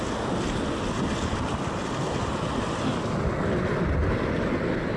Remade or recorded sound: recorded